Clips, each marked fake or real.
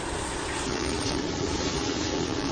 fake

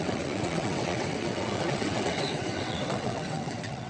fake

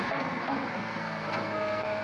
fake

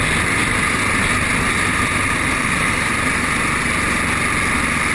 real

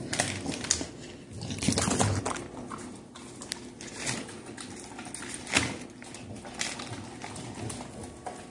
real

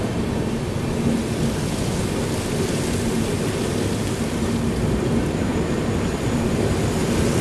real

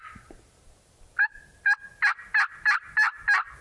real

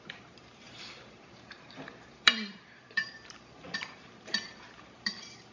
fake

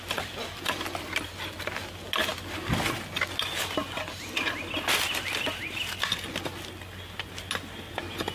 real